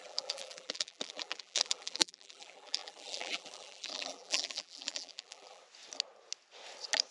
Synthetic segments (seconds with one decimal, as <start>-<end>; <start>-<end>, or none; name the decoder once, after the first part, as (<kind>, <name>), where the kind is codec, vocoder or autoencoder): 0.0-5.6 (vocoder, BigVGAN v2)